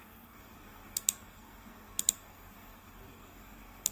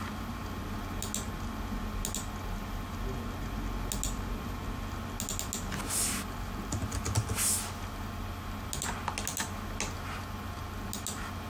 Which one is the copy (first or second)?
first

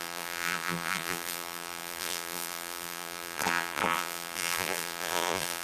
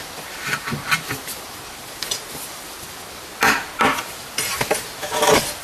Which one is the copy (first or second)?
first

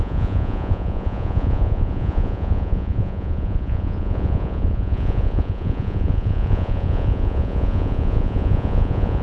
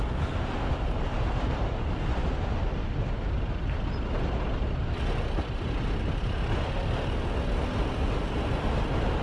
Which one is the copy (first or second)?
first